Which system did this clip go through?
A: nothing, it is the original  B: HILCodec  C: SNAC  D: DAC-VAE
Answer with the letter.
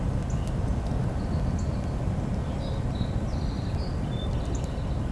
A